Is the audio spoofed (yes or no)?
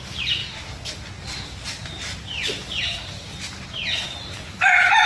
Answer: no